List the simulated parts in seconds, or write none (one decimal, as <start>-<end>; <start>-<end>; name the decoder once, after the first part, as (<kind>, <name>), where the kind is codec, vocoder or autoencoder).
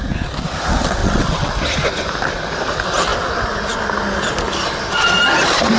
1.0-1.5 (vocoder, WaveNeXt)